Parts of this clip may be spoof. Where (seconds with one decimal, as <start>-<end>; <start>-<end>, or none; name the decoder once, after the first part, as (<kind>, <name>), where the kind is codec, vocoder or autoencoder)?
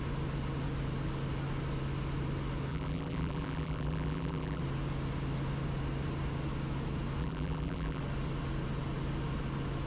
2.7-4.6 (vocoder, BigVGAN v2); 7.2-8.0